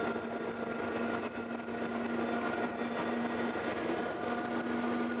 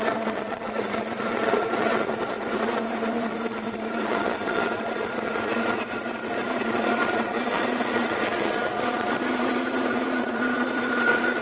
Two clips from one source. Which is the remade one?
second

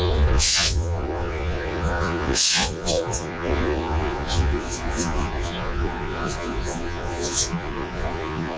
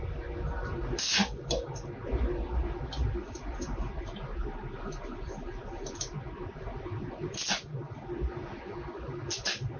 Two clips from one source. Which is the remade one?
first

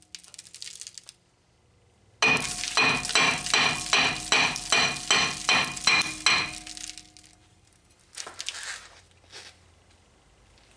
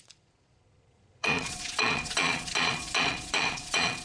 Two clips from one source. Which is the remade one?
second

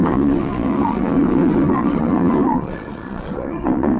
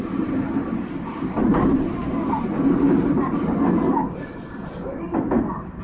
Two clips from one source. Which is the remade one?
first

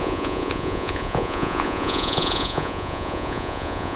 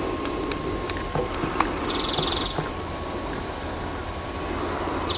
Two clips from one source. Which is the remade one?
first